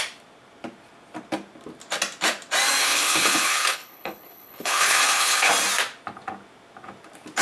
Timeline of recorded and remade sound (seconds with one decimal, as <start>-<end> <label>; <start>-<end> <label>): 0.0-2.8 recorded; 2.8-5.5 remade; 5.5-7.4 recorded